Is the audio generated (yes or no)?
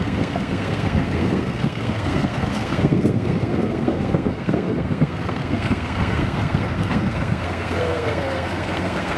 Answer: yes